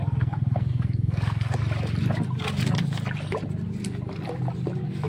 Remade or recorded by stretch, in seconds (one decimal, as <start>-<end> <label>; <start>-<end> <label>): 0.0-1.6 remade; 1.6-5.1 recorded

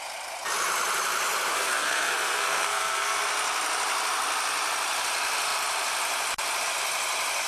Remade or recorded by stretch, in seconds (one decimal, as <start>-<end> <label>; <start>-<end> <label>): 0.0-1.5 recorded; 1.5-3.2 remade; 3.2-7.5 recorded

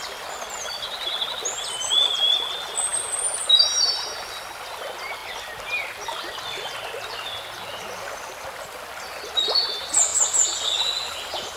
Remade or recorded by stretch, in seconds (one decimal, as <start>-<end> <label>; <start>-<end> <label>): 0.0-11.6 recorded

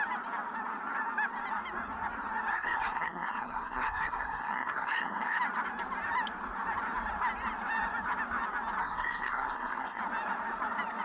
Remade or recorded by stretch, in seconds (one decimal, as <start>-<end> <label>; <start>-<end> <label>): 0.0-2.5 recorded; 2.5-5.4 remade; 5.4-8.8 recorded; 8.8-10.0 remade; 10.0-11.0 recorded

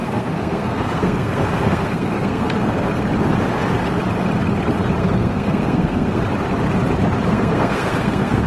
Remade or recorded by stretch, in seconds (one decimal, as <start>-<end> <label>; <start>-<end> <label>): 0.0-2.9 remade; 2.9-5.0 recorded; 5.0-6.2 remade; 6.2-7.3 recorded; 7.3-8.5 remade

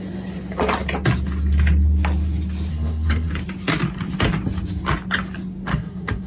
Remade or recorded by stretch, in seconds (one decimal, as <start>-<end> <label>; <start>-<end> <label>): 0.0-2.7 recorded; 2.7-3.3 remade; 3.3-5.7 recorded; 5.7-6.3 remade